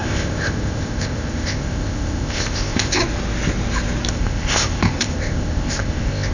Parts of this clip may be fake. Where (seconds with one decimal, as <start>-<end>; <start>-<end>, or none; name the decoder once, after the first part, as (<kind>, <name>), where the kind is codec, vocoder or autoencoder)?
0.0-3.0 (codec, ZipCodec); 4.1-6.3